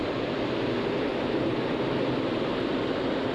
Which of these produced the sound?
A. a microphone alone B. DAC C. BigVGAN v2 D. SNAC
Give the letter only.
A